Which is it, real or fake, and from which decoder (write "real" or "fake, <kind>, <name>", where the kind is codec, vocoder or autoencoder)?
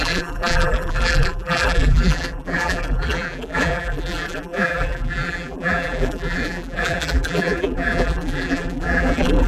fake, vocoder, BigVGAN v2